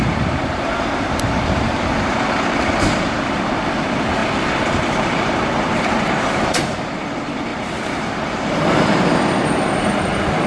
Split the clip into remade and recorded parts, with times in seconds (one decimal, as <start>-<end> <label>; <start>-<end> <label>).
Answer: 0.0-4.2 remade; 4.2-4.7 recorded; 4.7-10.5 remade